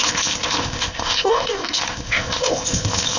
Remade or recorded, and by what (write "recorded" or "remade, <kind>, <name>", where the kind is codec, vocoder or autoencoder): remade, codec, ZipCodec